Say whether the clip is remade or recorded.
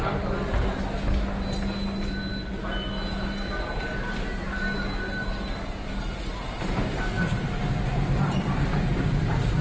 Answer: recorded